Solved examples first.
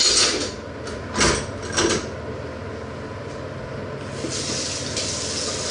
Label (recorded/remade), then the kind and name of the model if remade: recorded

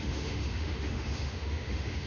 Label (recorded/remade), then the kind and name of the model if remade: remade, autoencoder, DAC-VAE